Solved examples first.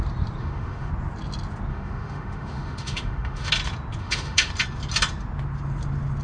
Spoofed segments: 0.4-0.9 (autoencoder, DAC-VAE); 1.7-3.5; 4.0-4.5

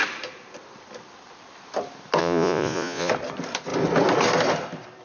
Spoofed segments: 2.2-3.1 (vocoder, Vocos)

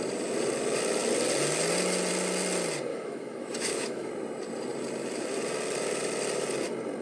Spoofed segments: 2.9-4.1 (autoencoder, DAC-VAE)

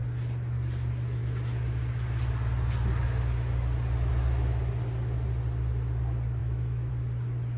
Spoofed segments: 6.4-6.9 (autoencoder, DAC-VAE)

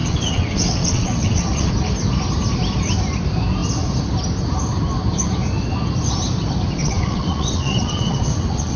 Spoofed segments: 0.0-1.7 (vocoder, WaveNeXt); 6.8-8.8